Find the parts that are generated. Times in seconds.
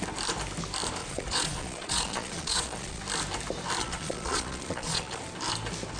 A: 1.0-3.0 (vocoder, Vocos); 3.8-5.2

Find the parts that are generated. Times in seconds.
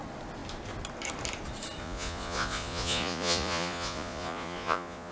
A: 1.8-5.1 (vocoder, Vocos)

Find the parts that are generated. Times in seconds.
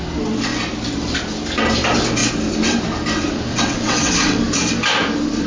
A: 3.5-4.4 (vocoder, WaveNeXt)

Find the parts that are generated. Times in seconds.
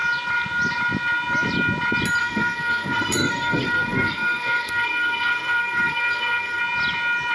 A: 2.2-6.6 (codec, SNAC)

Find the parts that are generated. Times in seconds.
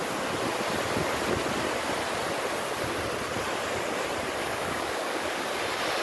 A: 4.4-5.4 (codec, DAC)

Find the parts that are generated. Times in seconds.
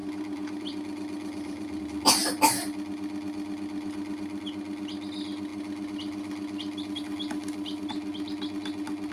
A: 0.0-1.8 (vocoder, BigVGAN v2); 2.2-4.4; 5.5-7.0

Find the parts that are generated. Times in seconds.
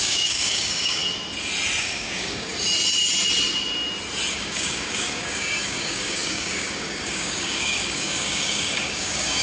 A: 0.0-1.0 (codec, DAC); 1.8-2.5; 4.3-9.4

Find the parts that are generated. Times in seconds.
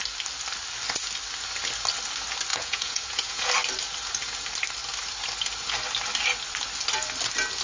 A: 2.5-3.5 (vocoder, Vocos)